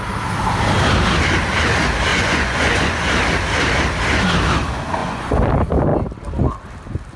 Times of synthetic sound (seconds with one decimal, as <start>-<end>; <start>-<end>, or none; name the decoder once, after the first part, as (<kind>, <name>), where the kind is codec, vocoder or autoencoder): 2.1-3.1 (vocoder, Vocos); 5.0-5.5